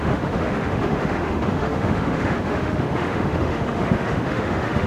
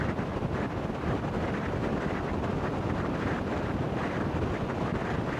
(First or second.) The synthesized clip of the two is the first